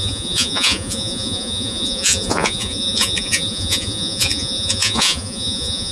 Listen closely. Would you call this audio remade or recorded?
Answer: remade